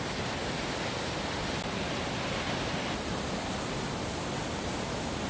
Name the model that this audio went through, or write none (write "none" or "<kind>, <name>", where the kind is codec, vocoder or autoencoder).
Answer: none